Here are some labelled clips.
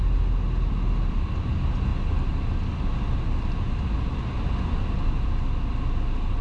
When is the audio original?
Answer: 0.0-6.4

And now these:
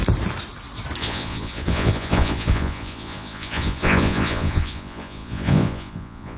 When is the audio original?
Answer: 0.0-1.0

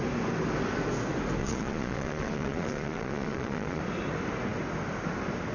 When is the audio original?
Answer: 0.0-1.4; 3.8-5.5

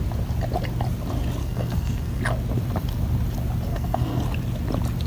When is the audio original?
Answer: 0.0-1.4; 2.2-3.7; 4.2-5.1

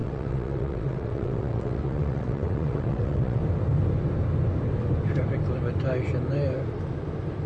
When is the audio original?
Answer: 3.4-7.5

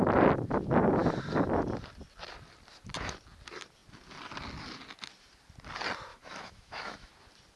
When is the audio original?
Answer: 0.0-6.1; 7.1-7.6